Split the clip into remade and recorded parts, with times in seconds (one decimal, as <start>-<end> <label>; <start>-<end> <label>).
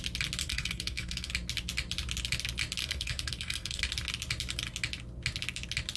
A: 0.0-0.5 recorded; 0.5-1.3 remade; 1.3-2.8 recorded; 2.8-3.8 remade; 3.8-6.0 recorded